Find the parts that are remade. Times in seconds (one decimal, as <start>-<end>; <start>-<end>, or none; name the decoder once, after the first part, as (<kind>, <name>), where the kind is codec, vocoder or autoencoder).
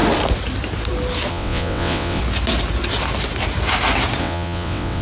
1.3-2.2 (vocoder, WaveNeXt); 4.2-5.0